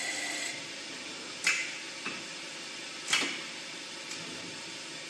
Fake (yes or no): no